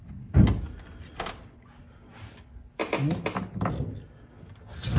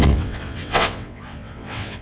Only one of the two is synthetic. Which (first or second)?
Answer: second